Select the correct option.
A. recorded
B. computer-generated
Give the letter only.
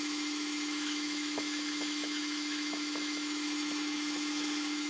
B